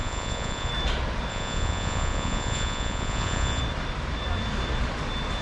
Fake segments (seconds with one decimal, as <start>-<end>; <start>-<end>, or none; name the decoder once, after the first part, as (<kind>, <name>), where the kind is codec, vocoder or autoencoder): 0.0-0.7 (vocoder, Vocos); 1.3-3.6